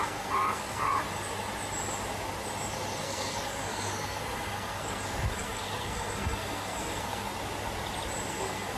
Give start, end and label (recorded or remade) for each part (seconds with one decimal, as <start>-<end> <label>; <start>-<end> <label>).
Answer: 0.0-1.0 remade; 1.0-3.0 recorded; 3.0-7.3 remade; 7.3-8.3 recorded; 8.3-8.8 remade